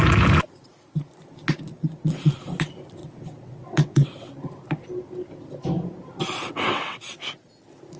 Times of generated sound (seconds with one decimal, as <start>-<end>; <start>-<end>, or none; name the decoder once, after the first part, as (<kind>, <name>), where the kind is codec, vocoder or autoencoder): 1.7-2.3 (vocoder, WaveNeXt); 3.0-4.3; 6.5-7.2